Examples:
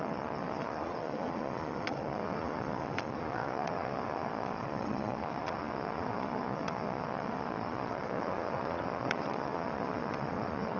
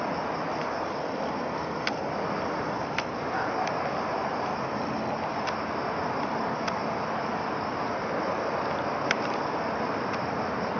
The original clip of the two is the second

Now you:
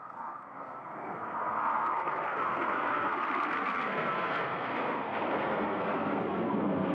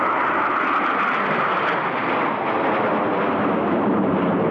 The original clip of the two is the second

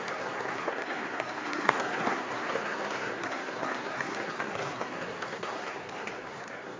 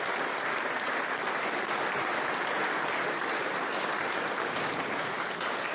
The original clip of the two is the second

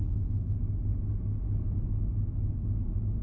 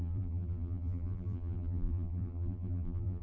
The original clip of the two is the first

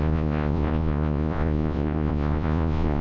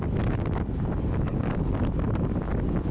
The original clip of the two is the second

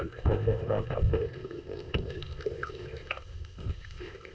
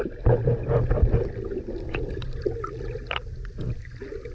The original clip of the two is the second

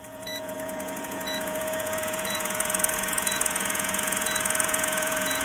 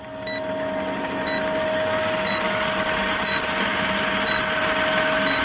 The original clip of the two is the second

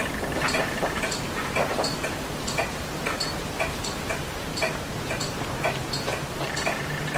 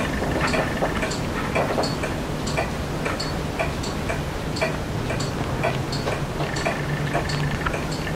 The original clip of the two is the second